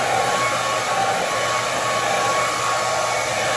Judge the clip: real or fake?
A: real